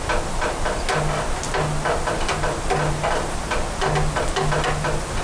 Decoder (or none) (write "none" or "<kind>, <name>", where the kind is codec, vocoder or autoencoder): none